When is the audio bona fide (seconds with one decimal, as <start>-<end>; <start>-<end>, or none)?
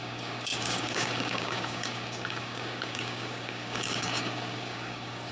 none